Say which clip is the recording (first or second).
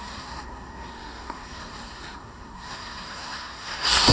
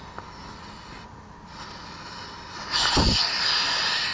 second